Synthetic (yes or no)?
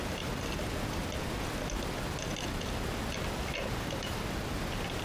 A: no